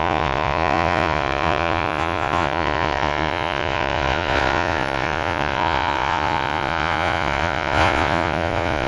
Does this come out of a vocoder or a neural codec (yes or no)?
yes